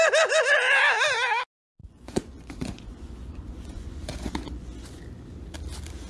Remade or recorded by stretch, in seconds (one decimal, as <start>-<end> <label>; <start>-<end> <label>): 0.0-1.8 recorded; 1.8-5.0 remade; 5.0-6.1 recorded